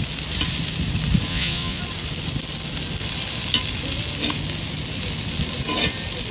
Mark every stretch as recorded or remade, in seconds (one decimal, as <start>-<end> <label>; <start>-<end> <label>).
0.0-1.3 recorded; 1.3-1.8 remade; 1.8-6.3 recorded